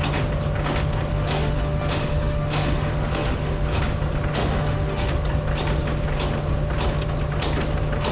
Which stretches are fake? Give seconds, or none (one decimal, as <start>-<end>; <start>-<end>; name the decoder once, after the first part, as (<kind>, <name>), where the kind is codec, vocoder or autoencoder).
1.1-3.8 (autoencoder, DAC-VAE); 4.4-5.1